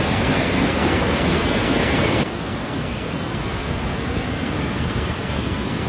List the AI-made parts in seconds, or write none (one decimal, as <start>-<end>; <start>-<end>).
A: 0.0-5.9